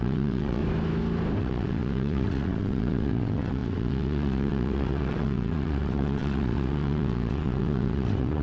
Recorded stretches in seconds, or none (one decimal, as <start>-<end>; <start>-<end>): 0.6-1.4